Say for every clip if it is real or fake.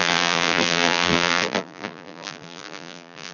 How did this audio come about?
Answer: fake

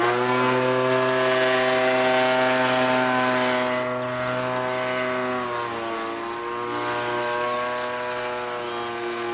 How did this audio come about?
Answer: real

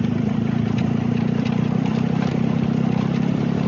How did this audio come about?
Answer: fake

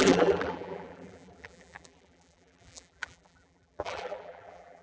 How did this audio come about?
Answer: fake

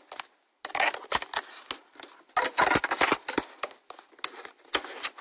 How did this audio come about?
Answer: real